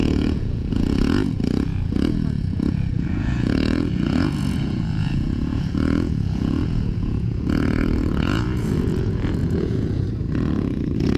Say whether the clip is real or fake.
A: fake